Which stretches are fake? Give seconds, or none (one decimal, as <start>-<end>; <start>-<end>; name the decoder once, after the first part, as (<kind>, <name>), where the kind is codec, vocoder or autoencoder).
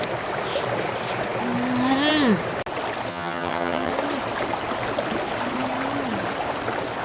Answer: 3.1-3.9 (vocoder, HiFi-GAN)